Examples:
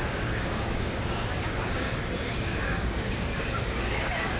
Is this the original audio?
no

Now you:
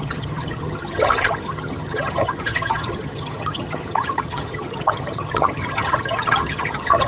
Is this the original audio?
no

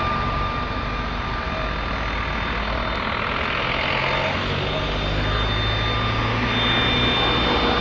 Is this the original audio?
yes